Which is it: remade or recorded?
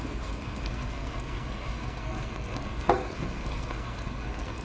remade